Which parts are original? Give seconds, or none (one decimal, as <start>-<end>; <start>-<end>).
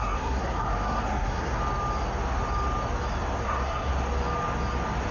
1.6-3.4; 3.9-5.1